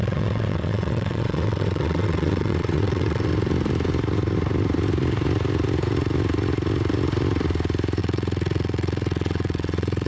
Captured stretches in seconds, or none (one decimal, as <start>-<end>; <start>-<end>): 3.3-8.0